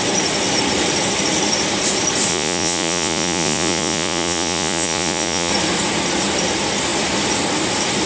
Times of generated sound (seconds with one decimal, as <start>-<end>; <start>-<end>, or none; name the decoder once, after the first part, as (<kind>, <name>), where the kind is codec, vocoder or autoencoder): 2.3-5.5 (vocoder, Vocos)